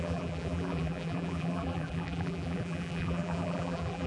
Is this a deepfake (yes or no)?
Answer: yes